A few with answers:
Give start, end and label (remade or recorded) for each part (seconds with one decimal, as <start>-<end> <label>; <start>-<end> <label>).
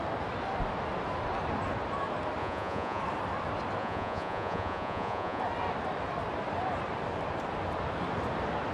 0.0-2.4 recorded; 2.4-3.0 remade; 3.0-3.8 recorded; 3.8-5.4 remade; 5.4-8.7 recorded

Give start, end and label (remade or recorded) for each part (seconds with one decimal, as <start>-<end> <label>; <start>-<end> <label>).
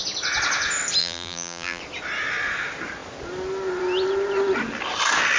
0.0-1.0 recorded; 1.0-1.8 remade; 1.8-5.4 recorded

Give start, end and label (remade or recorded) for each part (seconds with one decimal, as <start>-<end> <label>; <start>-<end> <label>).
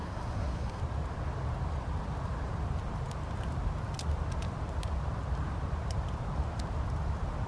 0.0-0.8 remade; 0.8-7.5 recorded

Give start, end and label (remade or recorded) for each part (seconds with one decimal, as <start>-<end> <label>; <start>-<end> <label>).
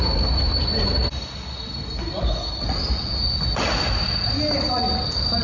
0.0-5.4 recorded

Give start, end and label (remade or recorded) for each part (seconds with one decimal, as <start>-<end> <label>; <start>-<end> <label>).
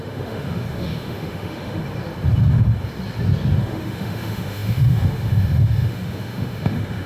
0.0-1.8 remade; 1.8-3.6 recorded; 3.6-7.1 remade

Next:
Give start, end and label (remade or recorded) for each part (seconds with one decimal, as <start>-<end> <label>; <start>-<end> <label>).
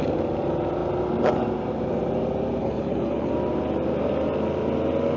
0.0-2.6 recorded; 2.6-3.3 remade; 3.3-5.2 recorded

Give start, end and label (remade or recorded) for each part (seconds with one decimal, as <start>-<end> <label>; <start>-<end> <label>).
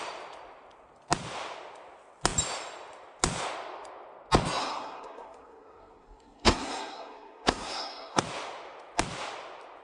0.0-4.6 recorded; 4.6-8.2 remade; 8.2-9.8 recorded